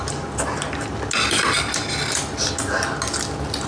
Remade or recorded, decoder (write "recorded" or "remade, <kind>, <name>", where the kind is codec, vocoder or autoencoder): recorded